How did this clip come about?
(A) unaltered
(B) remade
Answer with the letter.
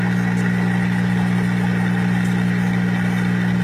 A